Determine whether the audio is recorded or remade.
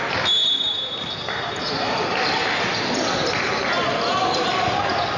recorded